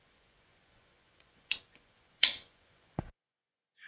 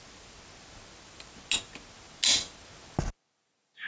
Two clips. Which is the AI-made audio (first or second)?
first